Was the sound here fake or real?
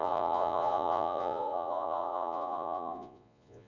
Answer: fake